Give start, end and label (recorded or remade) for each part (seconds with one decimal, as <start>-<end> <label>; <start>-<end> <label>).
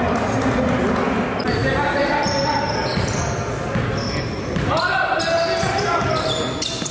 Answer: 0.0-6.9 recorded